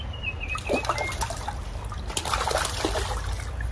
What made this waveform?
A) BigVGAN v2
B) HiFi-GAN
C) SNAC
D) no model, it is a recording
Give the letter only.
D